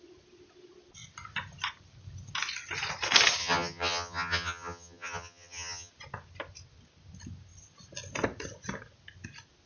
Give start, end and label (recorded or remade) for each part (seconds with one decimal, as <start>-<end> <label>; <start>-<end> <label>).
0.0-3.4 recorded; 3.4-5.9 remade; 5.9-9.7 recorded